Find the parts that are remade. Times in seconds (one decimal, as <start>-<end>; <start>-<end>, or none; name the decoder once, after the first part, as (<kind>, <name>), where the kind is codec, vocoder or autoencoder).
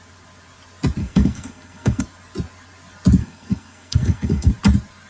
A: 1.0-2.0 (codec, SNAC); 3.2-4.5